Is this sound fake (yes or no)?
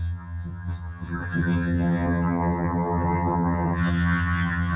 yes